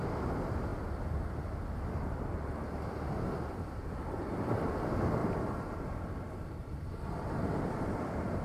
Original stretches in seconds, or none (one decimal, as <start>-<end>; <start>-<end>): 0.0-8.4